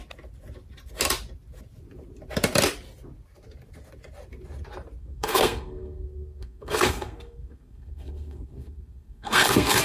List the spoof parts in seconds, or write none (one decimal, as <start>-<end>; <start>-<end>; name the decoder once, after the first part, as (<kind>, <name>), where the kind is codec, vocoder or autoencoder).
5.0-9.8 (codec, SNAC)